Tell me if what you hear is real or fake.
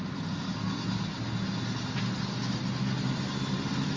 real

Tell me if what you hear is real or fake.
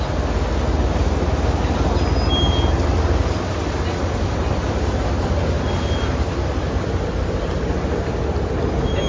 real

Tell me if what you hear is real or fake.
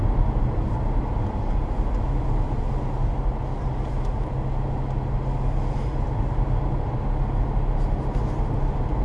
real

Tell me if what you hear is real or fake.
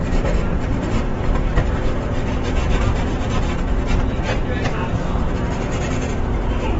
fake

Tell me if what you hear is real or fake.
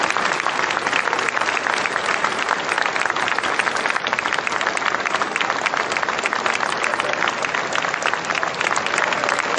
real